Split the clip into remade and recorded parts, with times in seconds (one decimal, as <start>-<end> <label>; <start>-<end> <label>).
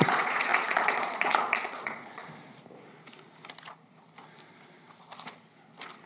0.0-2.2 remade; 2.2-6.1 recorded